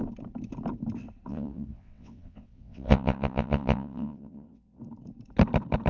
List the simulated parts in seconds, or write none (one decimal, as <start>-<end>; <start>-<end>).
1.3-4.8